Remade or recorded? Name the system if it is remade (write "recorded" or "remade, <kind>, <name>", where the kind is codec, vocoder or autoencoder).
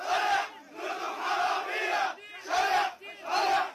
recorded